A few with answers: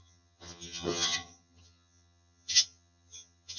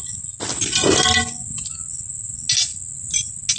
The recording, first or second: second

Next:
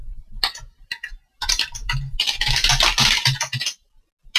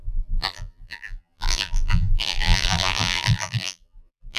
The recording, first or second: first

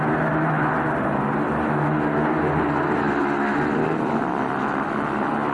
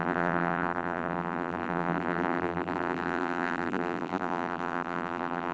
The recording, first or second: first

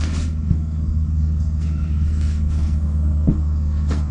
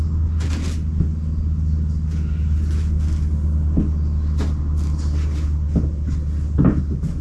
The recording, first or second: second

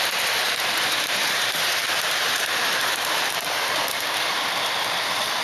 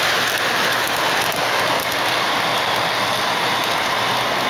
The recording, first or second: second